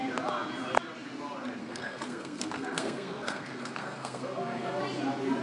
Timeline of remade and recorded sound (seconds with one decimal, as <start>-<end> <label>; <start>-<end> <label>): 0.0-1.6 recorded; 1.6-4.8 remade; 4.8-5.4 recorded